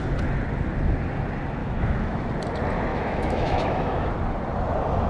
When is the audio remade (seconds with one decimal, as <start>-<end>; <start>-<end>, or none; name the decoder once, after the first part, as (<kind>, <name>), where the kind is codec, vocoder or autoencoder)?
1.6-2.3 (autoencoder, DAC-VAE); 2.9-4.1